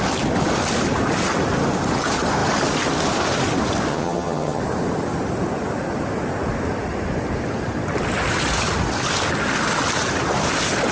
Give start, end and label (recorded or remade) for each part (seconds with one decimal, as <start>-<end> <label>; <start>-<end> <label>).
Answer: 0.0-3.9 recorded; 3.9-4.6 remade; 4.6-10.9 recorded